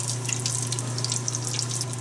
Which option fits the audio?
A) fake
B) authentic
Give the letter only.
B